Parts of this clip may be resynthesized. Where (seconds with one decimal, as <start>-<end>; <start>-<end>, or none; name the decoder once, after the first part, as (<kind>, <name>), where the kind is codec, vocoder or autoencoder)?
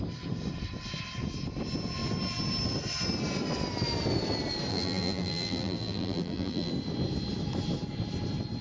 4.7-6.7 (vocoder, BigVGAN v2)